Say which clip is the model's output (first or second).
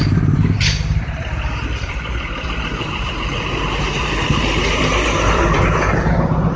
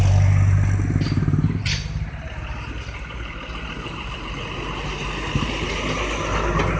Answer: first